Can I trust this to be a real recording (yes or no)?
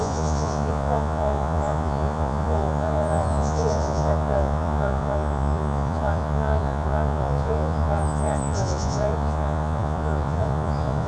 no